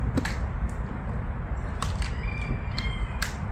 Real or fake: fake